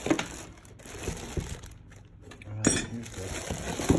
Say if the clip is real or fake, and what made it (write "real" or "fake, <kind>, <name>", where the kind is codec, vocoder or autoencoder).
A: real